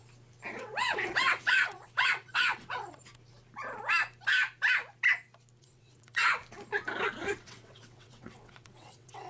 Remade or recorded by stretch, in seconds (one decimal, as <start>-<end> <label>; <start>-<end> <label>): 0.0-0.6 recorded; 0.6-3.0 remade; 3.0-5.6 recorded; 5.6-6.4 remade; 6.4-7.4 recorded; 7.4-9.3 remade